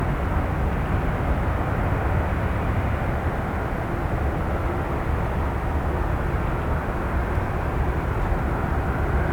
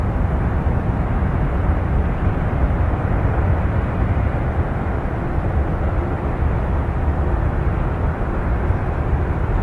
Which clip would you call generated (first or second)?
second